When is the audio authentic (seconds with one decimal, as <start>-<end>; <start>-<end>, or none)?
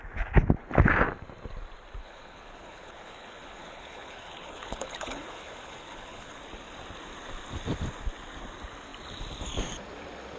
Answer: 0.0-2.0; 6.4-10.4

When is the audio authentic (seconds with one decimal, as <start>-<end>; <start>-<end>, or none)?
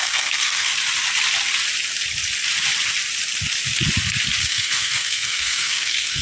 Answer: 0.7-4.4